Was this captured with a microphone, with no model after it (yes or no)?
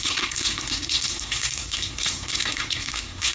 no